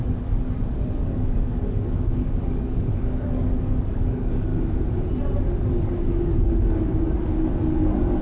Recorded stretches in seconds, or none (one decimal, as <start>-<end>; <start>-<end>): 4.5-5.7